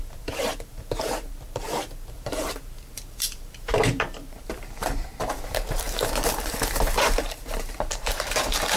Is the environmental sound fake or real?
fake